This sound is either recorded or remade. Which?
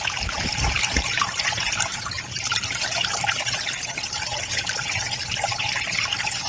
remade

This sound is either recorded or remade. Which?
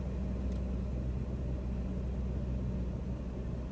recorded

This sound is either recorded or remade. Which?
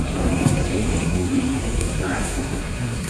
remade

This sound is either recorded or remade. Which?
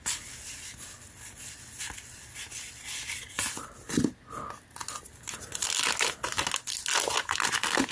recorded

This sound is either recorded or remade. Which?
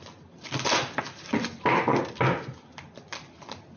recorded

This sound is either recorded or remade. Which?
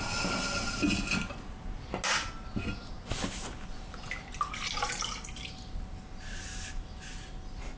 recorded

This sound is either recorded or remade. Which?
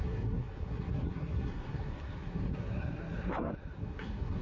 remade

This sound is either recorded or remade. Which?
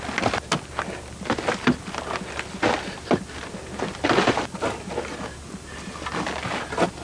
recorded